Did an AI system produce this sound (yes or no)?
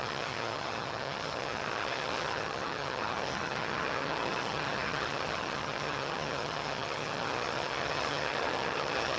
yes